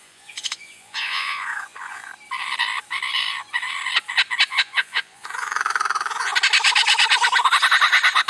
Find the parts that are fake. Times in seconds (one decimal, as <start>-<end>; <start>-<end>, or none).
0.0-2.1; 4.5-6.3